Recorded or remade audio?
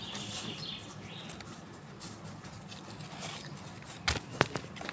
recorded